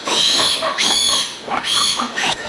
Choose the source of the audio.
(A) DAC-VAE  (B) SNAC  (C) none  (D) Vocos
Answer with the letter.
A